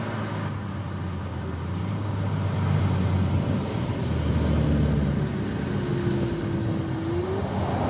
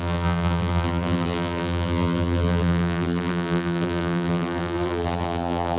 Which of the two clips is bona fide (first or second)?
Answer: first